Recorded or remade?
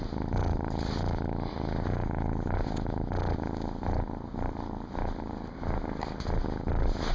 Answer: recorded